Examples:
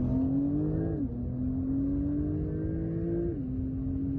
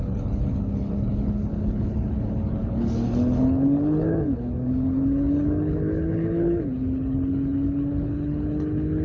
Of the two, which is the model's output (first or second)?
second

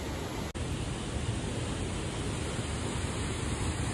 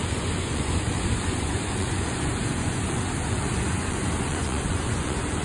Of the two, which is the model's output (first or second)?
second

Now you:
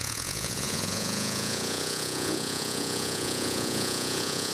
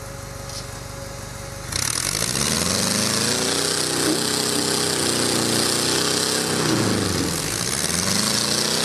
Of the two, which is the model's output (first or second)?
first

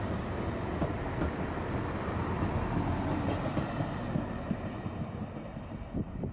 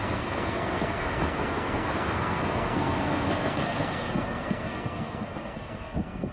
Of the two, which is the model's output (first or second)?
second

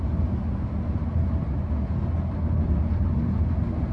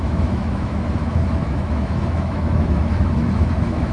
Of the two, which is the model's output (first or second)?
second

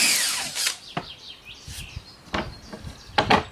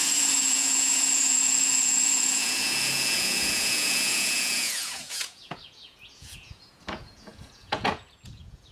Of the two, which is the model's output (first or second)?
second